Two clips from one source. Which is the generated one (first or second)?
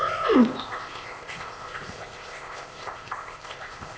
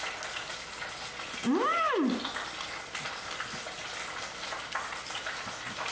first